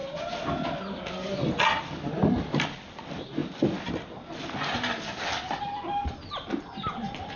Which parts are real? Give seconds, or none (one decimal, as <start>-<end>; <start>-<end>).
0.0-7.4